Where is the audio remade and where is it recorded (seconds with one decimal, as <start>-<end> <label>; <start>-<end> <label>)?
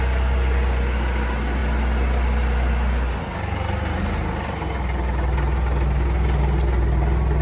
0.0-7.4 recorded